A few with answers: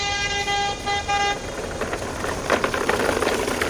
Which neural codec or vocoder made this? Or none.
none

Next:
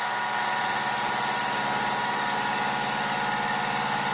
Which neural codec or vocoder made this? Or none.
none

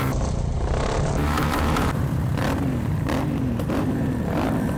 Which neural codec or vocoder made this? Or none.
vocoder, BigVGAN v2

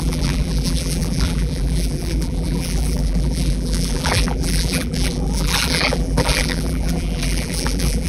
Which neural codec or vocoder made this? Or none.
vocoder, BigVGAN v2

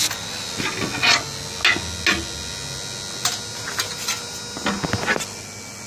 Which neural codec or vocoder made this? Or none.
none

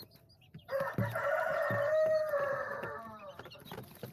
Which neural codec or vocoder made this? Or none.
vocoder, BigVGAN v2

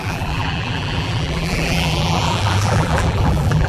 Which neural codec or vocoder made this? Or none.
vocoder, BigVGAN v2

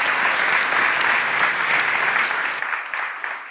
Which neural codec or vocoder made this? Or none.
none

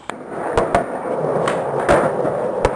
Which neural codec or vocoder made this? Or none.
none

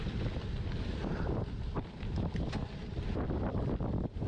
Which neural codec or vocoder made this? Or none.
vocoder, BigVGAN v2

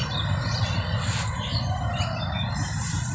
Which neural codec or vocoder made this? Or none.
vocoder, BigVGAN v2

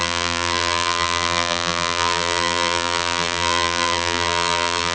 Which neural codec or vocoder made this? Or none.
vocoder, BigVGAN v2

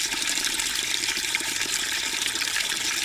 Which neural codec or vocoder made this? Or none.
vocoder, BigVGAN v2